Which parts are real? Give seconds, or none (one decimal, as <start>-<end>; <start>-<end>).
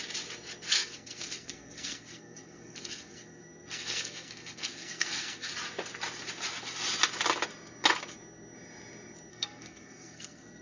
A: 0.0-0.7; 5.5-9.3